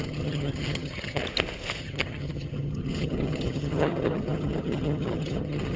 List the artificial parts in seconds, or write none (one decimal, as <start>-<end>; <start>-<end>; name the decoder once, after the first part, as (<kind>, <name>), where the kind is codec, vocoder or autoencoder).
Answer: 0.0-1.2 (vocoder, HiFi-GAN); 1.8-5.8